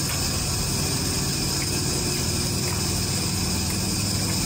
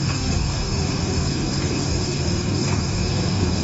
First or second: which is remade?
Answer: second